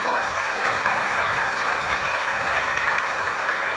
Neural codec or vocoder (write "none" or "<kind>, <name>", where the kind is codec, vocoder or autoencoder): codec, SNAC